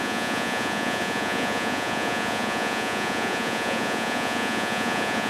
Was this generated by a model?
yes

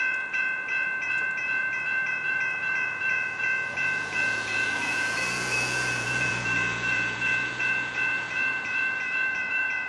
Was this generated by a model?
yes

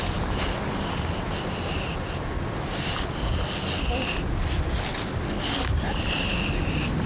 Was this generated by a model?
no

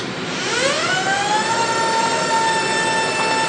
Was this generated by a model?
no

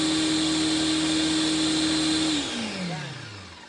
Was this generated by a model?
no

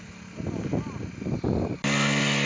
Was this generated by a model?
no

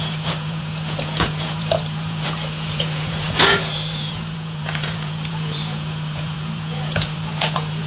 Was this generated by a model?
yes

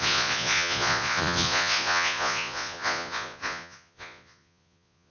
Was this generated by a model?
yes